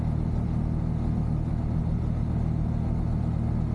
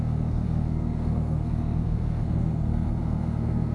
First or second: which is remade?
second